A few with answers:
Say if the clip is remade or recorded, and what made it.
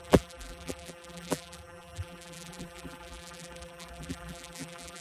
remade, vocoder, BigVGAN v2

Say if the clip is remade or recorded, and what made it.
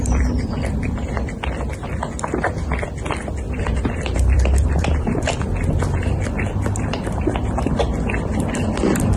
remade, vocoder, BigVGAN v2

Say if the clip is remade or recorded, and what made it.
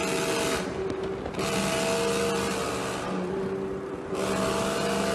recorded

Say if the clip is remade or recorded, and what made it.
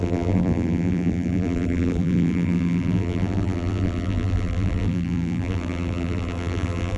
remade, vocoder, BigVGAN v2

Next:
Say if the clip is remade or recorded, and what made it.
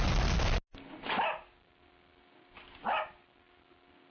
recorded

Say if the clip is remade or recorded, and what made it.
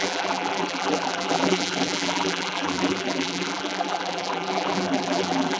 remade, vocoder, BigVGAN v2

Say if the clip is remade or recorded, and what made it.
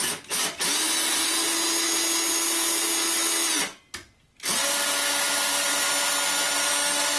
recorded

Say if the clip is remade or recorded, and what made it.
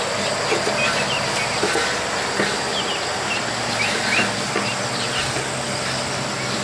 recorded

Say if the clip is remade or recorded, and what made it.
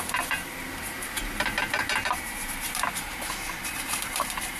remade, vocoder, BigVGAN v2